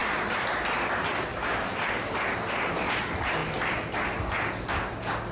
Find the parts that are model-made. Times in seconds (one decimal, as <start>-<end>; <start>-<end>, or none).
0.0-0.6; 1.3-3.0